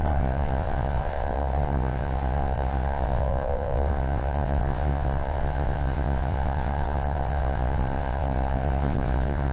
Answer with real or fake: fake